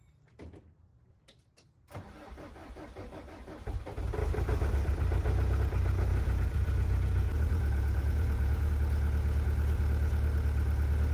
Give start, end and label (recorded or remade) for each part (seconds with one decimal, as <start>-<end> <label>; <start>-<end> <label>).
0.0-6.1 recorded; 6.1-8.7 remade; 8.7-11.1 recorded

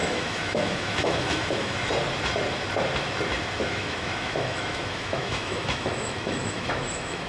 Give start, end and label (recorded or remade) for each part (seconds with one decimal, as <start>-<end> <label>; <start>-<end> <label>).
0.0-1.9 remade; 1.9-3.6 recorded; 3.6-7.3 remade

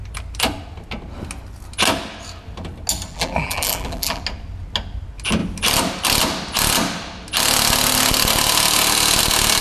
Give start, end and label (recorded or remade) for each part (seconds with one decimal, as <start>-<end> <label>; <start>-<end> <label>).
0.0-3.1 recorded; 3.1-4.2 remade; 4.2-9.6 recorded